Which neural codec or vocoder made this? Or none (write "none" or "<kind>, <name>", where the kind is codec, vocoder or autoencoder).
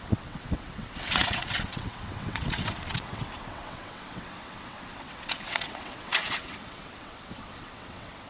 vocoder, WaveNeXt